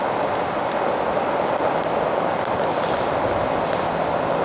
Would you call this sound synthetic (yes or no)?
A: no